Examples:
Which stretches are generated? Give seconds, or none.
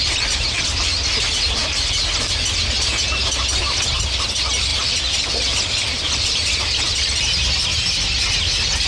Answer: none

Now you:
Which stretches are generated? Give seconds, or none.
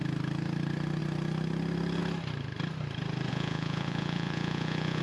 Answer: 3.3-5.0 (vocoder, Vocos)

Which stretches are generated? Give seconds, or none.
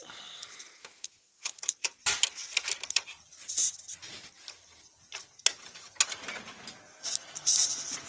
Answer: 0.8-1.6 (autoencoder, DAC-VAE)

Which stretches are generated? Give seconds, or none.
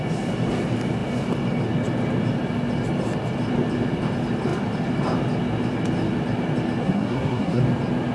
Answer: 6.8-7.6 (codec, SNAC)